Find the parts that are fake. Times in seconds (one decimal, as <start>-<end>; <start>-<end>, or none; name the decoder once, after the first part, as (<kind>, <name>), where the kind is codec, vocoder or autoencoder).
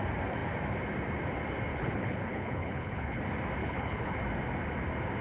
1.7-3.2 (codec, HILCodec); 3.6-4.2